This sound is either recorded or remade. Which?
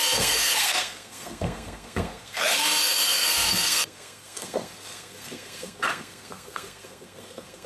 remade